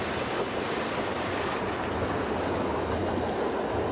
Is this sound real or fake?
real